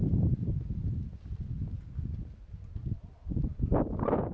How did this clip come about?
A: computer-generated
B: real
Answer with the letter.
B